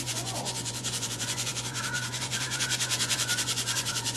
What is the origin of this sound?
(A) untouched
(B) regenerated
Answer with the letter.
B